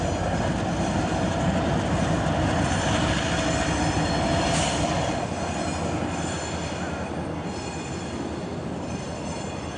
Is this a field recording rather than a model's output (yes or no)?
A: yes